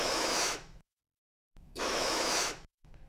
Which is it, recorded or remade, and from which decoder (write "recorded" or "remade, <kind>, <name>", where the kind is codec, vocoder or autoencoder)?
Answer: remade, autoencoder, DAC-VAE